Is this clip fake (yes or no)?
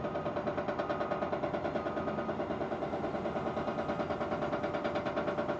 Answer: no